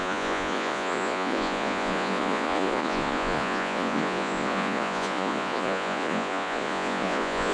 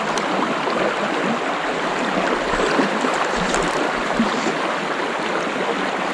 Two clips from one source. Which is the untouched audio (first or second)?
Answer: second